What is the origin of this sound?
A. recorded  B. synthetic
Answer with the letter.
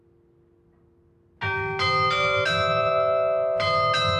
A